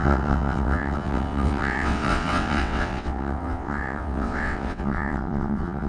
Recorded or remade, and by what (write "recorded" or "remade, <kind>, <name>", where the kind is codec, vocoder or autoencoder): remade, vocoder, WaveNeXt